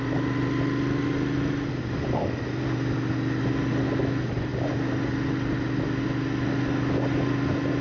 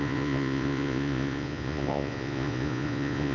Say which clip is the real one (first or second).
first